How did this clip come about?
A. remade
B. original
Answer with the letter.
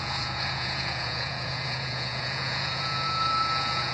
A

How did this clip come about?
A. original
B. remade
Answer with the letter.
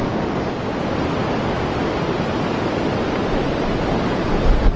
A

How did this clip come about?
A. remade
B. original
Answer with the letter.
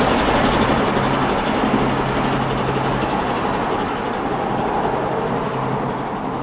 B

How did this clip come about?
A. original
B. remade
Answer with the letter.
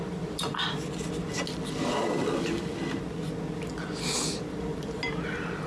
A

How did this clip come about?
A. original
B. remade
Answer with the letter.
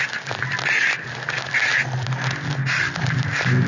A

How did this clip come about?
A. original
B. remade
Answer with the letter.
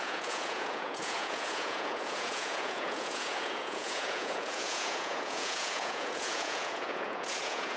B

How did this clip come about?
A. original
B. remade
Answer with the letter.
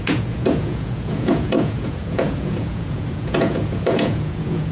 B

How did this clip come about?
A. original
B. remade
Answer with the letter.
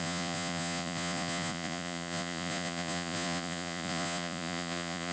B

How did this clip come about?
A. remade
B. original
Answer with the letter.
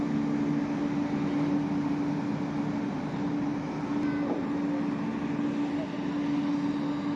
B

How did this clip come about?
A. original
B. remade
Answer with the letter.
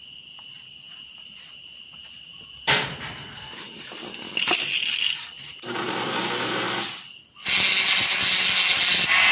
A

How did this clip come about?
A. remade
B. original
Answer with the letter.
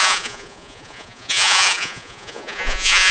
A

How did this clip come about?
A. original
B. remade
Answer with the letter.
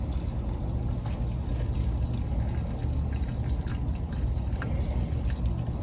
A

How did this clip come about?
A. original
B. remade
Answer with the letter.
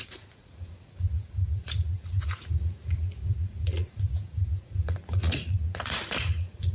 B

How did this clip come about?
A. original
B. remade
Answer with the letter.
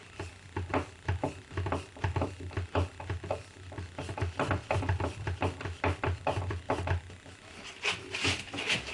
A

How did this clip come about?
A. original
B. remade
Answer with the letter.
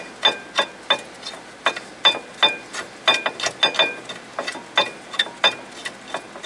A